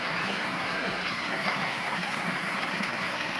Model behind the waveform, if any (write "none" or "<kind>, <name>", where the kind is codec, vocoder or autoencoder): codec, SNAC